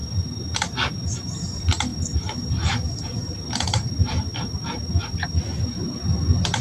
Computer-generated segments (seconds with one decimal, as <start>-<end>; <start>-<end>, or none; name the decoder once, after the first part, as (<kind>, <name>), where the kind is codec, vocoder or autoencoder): none